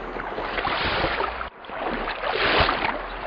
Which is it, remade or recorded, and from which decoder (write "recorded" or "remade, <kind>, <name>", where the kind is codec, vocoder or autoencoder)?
recorded